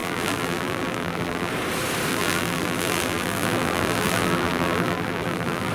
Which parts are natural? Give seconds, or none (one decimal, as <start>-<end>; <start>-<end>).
1.5-2.1